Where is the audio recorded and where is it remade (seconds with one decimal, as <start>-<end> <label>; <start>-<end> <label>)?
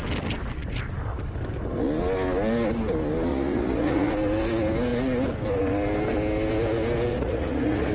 0.0-3.3 recorded; 3.3-4.1 remade; 4.1-7.1 recorded; 7.1-7.9 remade